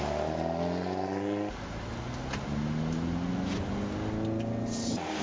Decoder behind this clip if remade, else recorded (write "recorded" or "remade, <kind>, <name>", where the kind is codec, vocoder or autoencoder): recorded